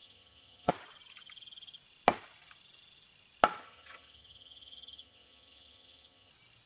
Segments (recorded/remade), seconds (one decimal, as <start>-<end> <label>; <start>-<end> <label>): 0.0-0.7 remade; 0.7-3.6 recorded; 3.6-6.3 remade; 6.3-6.7 recorded